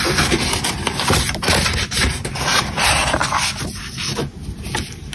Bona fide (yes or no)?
no